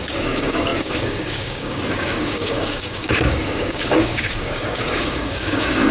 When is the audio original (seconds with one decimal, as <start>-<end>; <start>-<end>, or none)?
none